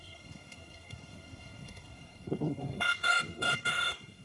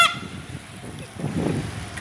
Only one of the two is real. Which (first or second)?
second